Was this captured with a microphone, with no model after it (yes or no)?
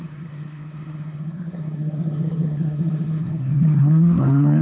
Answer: no